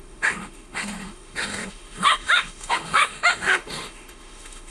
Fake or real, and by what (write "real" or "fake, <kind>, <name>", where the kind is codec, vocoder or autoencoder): fake, autoencoder, DAC-VAE